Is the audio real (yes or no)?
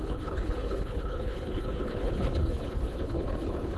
no